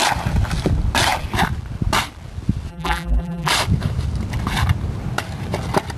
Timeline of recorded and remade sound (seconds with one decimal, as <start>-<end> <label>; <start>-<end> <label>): 0.0-2.7 recorded; 2.7-3.5 remade; 3.5-6.0 recorded